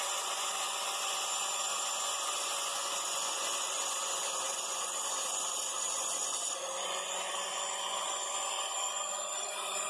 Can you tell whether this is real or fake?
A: fake